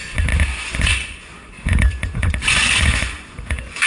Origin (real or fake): fake